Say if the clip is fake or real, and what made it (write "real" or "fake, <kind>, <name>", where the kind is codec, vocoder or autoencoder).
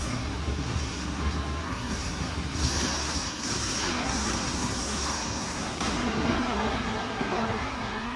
fake, codec, SNAC